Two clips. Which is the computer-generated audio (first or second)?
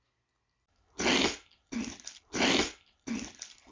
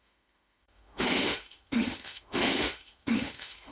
second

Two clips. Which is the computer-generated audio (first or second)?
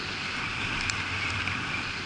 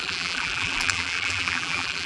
second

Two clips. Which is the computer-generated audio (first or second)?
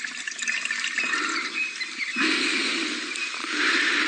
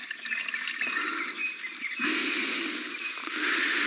first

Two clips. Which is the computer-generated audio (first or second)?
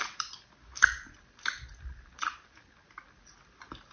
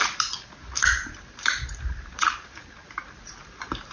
second